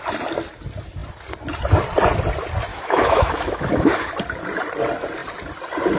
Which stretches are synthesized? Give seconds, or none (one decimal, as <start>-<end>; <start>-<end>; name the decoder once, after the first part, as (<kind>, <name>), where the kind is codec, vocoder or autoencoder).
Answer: 2.7-4.1 (autoencoder, DAC-VAE)